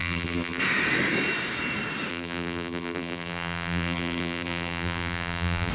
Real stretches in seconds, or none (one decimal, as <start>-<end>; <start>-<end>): 0.6-2.1